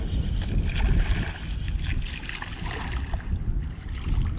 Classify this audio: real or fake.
real